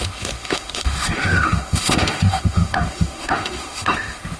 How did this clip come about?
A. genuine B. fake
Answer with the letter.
B